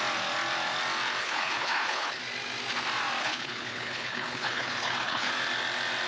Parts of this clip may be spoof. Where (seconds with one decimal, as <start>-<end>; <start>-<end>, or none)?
1.2-2.2; 3.2-5.3